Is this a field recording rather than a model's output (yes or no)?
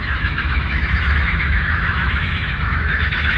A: no